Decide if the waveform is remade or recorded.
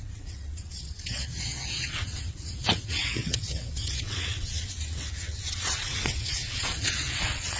remade